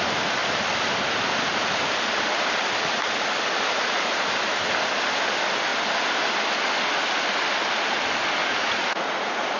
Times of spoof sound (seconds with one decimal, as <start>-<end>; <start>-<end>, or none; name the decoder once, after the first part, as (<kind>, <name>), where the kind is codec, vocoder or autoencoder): 8.4-9.6 (vocoder, Vocos)